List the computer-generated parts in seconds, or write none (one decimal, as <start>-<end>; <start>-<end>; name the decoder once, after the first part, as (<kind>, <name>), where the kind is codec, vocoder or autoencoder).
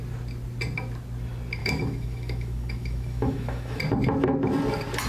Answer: 1.6-3.8 (autoencoder, DAC-VAE)